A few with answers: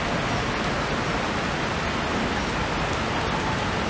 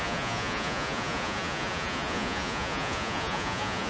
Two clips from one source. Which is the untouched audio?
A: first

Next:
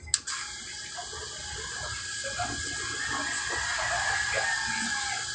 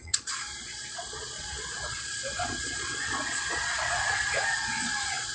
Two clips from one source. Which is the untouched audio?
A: first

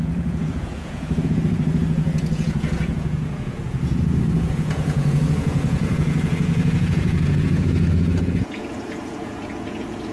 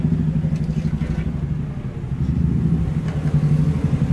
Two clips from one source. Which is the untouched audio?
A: second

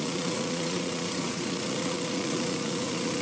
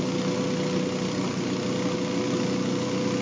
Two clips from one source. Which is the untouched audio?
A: second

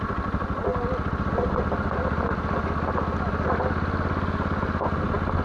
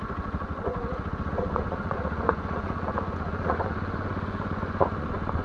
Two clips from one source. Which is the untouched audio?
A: first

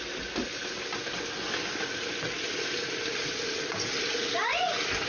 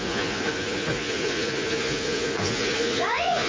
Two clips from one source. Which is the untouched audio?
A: first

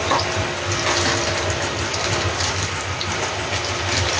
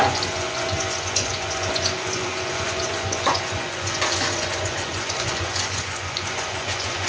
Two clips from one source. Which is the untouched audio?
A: first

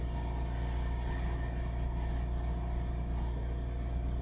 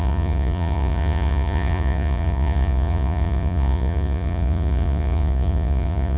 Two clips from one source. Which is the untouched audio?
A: first